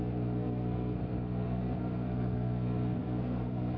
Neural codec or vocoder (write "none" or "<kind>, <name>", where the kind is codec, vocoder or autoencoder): codec, SNAC